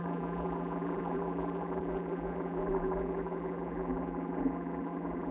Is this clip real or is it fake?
fake